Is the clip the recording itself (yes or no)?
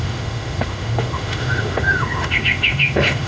no